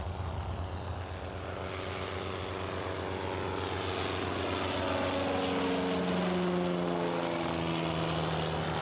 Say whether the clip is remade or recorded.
recorded